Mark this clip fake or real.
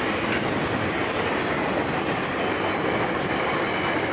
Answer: real